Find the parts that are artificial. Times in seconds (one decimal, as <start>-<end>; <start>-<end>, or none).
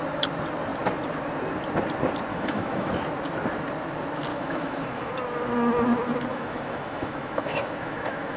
2.3-2.9; 4.3-5.1; 6.3-8.4